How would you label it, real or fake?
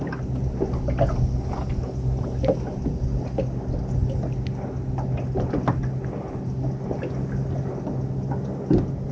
real